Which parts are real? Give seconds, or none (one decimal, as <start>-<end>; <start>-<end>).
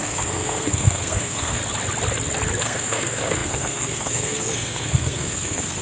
1.6-2.6